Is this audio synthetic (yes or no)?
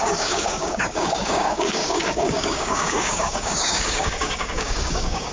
yes